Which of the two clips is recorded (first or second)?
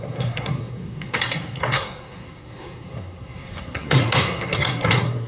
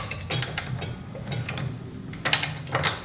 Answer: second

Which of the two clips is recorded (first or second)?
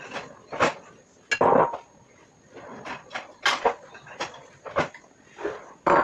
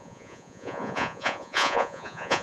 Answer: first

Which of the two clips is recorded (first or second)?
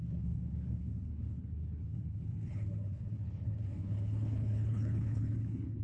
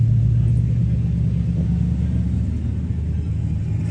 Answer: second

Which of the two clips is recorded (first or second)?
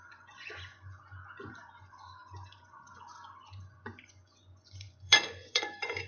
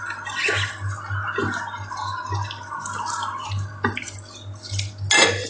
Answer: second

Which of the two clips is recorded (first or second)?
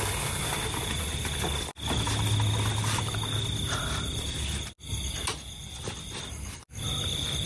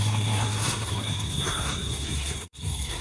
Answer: first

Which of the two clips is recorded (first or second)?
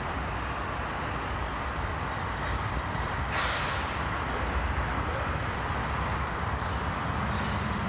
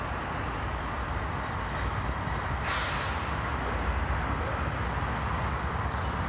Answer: second